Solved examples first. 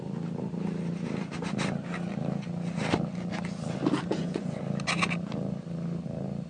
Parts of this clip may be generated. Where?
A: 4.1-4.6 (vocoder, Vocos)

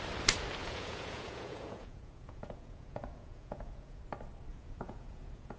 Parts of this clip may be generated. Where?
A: 0.6-4.0 (vocoder, Vocos); 4.5-5.6

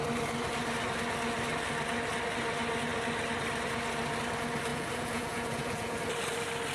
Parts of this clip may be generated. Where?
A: 4.7-6.0 (vocoder, Vocos)

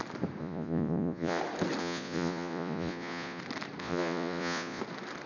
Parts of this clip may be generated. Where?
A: 0.4-1.4 (vocoder, Vocos); 1.8-3.4; 3.8-4.8

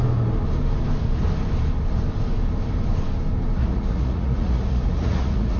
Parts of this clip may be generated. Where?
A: 3.6-5.6 (vocoder, Vocos)

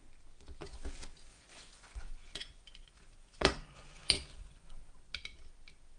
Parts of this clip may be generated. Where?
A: 1.3-4.9 (vocoder, Vocos)

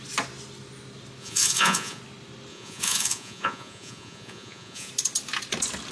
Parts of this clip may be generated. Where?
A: 1.2-2.0 (vocoder, Vocos); 2.5-4.9

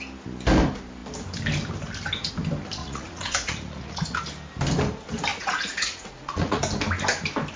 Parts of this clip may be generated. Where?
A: 2.8-4.2 (vocoder, Vocos); 5.3-6.6